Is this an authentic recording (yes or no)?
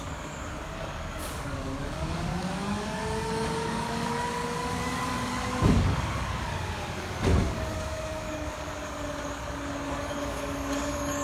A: no